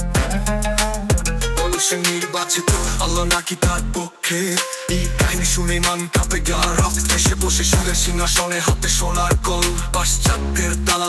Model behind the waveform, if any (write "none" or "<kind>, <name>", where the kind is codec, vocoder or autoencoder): none